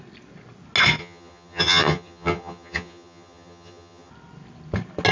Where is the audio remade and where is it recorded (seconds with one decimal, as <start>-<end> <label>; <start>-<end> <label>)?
0.0-1.0 recorded; 1.0-4.1 remade; 4.1-5.1 recorded